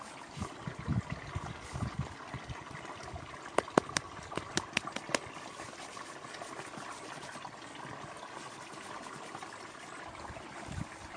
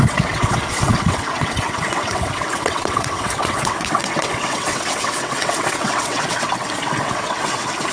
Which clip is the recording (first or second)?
first